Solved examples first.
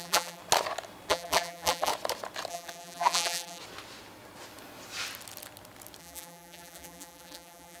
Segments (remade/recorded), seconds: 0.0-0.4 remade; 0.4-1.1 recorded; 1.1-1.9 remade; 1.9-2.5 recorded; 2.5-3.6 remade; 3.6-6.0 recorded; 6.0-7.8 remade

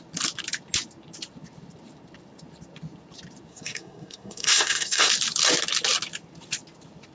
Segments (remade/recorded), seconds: 0.0-3.5 recorded; 3.5-5.1 remade; 5.1-7.1 recorded

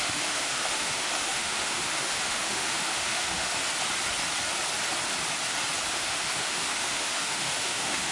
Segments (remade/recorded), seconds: 0.0-3.6 remade; 3.6-5.9 recorded; 5.9-8.1 remade

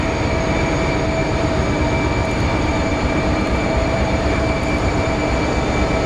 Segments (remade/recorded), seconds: 0.0-1.2 recorded; 1.2-1.7 remade; 1.7-2.2 recorded; 2.2-5.1 remade; 5.1-6.1 recorded

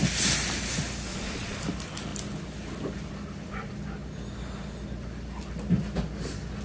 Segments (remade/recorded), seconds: 0.0-1.1 recorded; 1.1-1.6 remade; 1.6-6.6 recorded

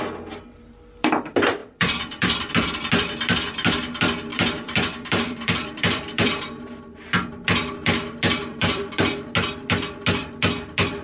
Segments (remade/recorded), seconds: 0.0-1.6 recorded; 1.6-2.5 remade; 2.5-4.3 recorded; 4.3-6.4 remade; 6.4-8.5 recorded; 8.5-9.0 remade; 9.0-11.0 recorded

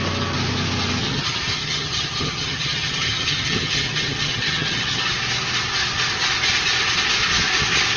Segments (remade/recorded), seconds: 0.0-1.0 recorded; 1.0-5.1 remade; 5.1-8.0 recorded

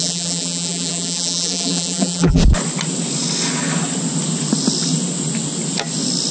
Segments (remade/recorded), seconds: 0.0-2.4 remade; 2.4-6.3 recorded